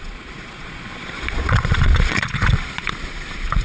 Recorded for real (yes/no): no